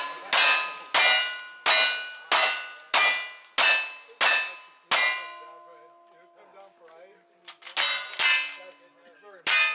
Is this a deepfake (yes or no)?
no